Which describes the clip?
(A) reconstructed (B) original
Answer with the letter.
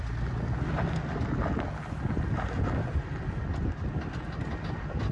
B